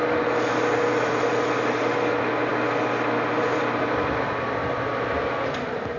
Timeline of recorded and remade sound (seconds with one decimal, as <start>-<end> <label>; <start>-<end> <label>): 0.0-6.0 recorded